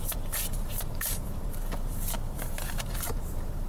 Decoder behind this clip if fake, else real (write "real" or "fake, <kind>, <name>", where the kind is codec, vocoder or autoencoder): fake, vocoder, BigVGAN v2